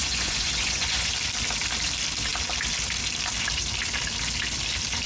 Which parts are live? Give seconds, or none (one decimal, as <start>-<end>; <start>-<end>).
1.1-5.1